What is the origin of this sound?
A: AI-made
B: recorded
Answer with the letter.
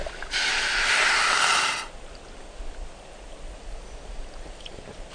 B